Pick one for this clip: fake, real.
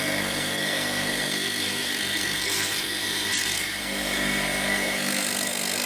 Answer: fake